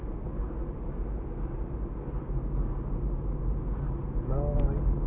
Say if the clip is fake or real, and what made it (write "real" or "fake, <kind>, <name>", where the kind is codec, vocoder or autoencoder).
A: real